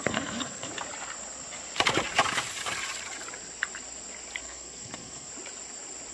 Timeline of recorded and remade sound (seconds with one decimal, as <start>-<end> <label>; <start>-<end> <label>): 0.0-0.7 remade; 0.7-4.4 recorded; 4.4-5.3 remade; 5.3-6.1 recorded